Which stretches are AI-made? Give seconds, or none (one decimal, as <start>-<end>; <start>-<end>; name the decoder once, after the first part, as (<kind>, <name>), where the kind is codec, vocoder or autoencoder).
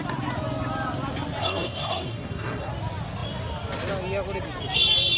1.4-2.7 (codec, SNAC)